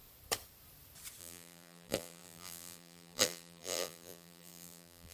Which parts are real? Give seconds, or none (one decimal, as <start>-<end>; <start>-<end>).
0.0-1.2